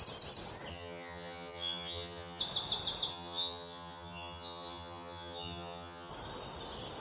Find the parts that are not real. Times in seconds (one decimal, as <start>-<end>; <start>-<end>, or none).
0.7-2.4; 3.1-6.1